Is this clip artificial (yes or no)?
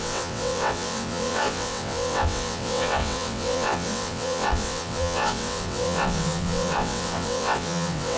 yes